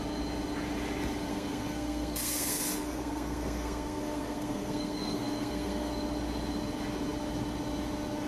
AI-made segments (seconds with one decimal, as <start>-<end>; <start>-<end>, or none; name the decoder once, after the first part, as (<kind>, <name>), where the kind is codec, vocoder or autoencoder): 1.3-5.9 (codec, SNAC)